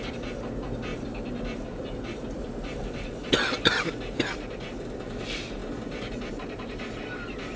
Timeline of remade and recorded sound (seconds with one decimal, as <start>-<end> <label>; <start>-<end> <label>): 0.0-0.9 recorded; 0.9-3.3 remade; 3.3-7.6 recorded